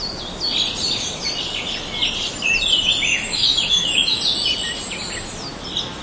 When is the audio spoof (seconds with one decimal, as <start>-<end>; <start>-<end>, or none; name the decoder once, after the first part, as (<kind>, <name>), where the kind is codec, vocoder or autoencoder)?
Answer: 3.1-4.2 (autoencoder, DAC-VAE)